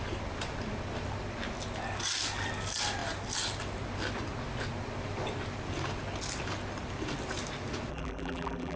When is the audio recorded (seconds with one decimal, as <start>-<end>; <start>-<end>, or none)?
0.0-7.9